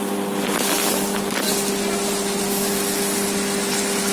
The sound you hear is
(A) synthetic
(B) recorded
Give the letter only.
B